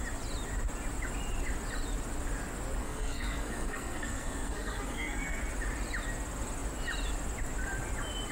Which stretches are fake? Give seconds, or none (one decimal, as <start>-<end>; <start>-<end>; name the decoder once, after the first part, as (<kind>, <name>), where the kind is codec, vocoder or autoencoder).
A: 2.8-5.4 (codec, SNAC)